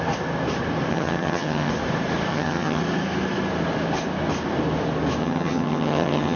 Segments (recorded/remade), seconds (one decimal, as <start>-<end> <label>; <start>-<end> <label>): 0.0-0.9 recorded; 0.9-1.7 remade; 1.7-2.3 recorded; 2.3-2.8 remade; 2.8-5.2 recorded; 5.2-6.4 remade